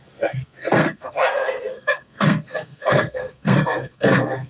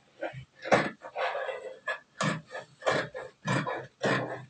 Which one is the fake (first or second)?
first